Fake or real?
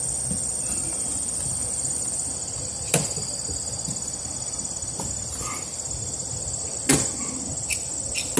real